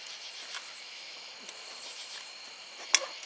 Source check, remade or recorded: recorded